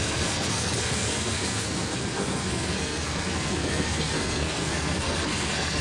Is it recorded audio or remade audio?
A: remade